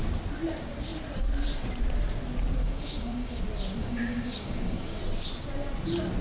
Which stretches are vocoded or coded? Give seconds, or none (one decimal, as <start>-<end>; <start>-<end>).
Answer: 2.6-3.4; 3.8-5.0